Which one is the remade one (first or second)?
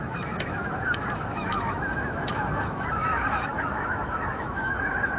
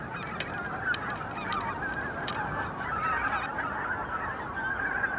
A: first